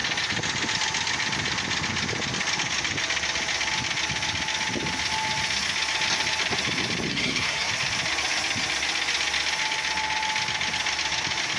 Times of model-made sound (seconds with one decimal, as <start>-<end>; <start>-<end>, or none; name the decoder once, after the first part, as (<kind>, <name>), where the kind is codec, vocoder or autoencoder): 7.1-7.7 (codec, SNAC)